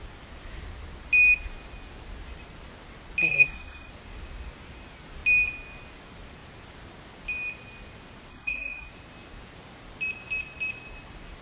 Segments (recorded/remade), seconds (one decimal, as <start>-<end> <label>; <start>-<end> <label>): 0.0-3.2 recorded; 3.2-3.9 remade; 3.9-8.3 recorded; 8.3-8.9 remade; 8.9-11.4 recorded